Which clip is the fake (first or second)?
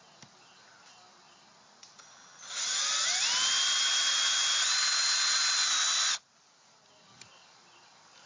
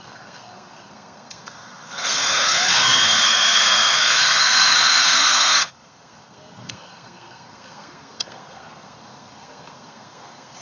second